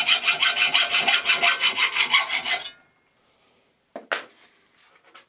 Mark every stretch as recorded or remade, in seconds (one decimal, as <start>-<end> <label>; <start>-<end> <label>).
0.0-5.3 recorded